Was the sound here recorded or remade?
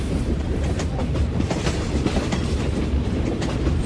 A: remade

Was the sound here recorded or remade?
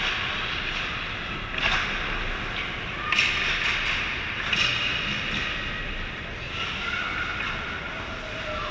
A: recorded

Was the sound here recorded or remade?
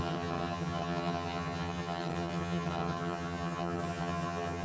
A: remade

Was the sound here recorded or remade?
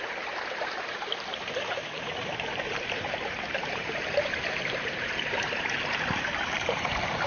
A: remade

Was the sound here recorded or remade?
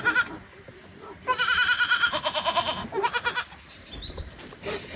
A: remade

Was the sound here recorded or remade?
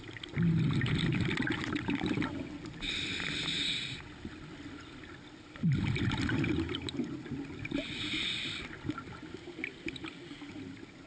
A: recorded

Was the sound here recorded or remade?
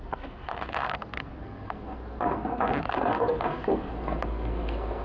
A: remade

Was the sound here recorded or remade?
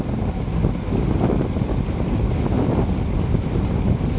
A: recorded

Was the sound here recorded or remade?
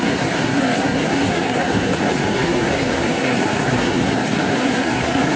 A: remade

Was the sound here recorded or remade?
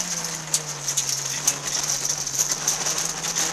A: recorded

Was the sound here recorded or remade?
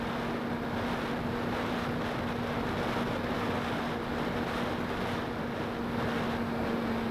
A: recorded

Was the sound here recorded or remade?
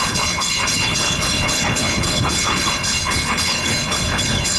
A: remade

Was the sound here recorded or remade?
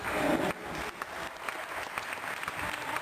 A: recorded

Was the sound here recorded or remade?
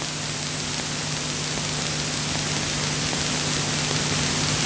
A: recorded